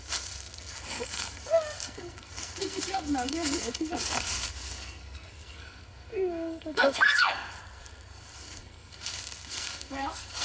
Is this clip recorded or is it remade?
remade